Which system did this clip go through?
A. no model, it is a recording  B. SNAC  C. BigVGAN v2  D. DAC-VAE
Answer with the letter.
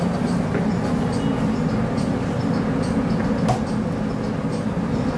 A